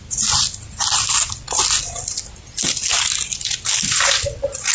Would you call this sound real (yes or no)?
yes